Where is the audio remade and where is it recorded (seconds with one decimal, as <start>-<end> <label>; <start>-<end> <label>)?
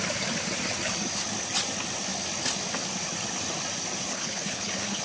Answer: 0.0-4.1 recorded; 4.1-5.0 remade